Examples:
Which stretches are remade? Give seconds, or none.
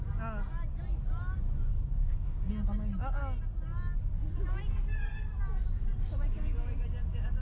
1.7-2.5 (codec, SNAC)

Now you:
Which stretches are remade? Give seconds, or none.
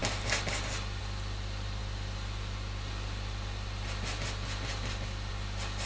none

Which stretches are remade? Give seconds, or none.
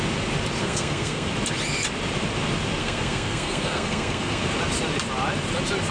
0.6-1.3 (codec, SNAC); 2.8-4.4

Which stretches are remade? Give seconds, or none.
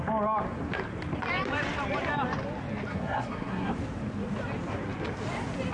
2.9-3.7 (codec, SNAC)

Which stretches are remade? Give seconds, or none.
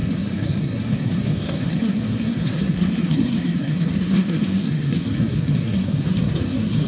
0.0-6.9 (codec, SNAC)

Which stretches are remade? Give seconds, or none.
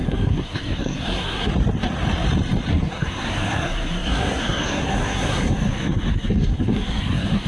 0.0-1.5 (codec, SNAC); 2.7-7.5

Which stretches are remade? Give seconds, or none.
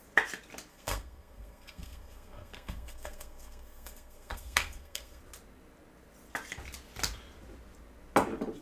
0.7-5.2 (codec, SNAC)